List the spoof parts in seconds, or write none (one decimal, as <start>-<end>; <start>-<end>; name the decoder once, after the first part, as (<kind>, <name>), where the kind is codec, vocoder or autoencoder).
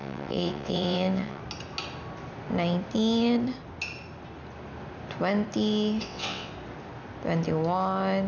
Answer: 0.0-1.4 (vocoder, WaveNeXt); 6.0-6.5